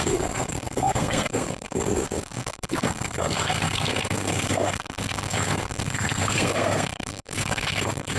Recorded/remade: remade